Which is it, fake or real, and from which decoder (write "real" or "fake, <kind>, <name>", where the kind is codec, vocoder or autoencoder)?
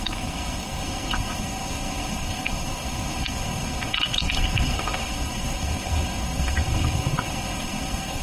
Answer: fake, codec, SNAC